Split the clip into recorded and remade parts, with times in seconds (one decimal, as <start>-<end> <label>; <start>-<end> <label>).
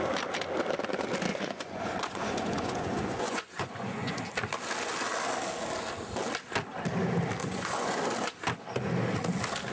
0.0-1.3 recorded; 1.3-4.2 remade; 4.2-7.4 recorded; 7.4-8.0 remade; 8.0-9.7 recorded